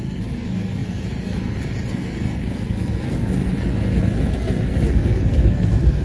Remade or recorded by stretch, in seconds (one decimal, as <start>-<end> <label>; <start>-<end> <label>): 0.0-6.0 remade